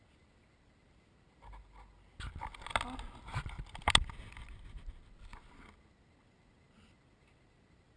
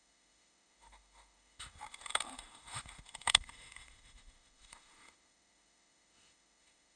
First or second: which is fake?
second